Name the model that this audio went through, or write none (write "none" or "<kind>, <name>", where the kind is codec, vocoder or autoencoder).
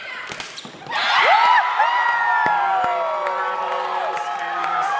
none